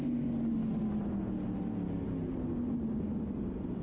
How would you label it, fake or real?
real